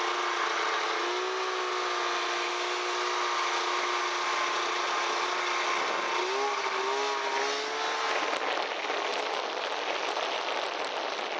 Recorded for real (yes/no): yes